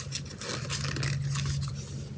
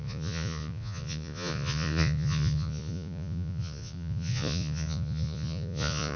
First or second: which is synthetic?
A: second